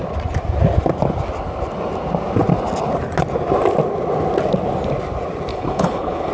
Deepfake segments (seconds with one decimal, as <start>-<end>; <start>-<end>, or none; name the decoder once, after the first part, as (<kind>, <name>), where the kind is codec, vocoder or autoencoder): 5.5-6.3 (codec, HILCodec)